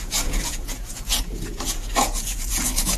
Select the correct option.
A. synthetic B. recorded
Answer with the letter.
A